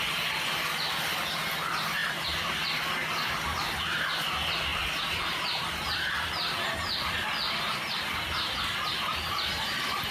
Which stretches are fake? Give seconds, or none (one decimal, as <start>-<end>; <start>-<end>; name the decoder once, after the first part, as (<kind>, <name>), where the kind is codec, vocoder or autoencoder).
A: none